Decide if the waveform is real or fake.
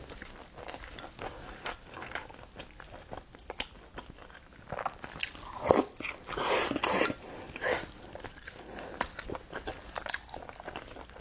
real